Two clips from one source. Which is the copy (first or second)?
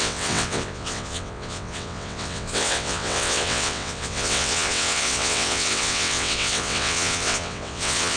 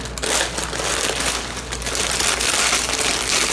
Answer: first